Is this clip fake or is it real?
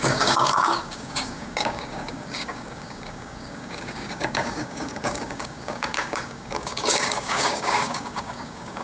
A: fake